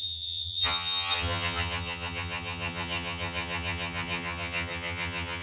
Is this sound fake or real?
fake